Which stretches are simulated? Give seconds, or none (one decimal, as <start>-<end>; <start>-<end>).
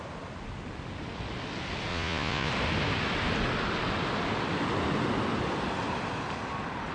1.9-2.5